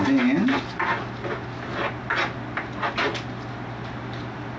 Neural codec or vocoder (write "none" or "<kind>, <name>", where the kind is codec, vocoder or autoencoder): none